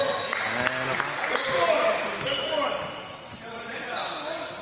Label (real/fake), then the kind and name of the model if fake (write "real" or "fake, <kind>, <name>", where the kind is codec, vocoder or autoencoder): real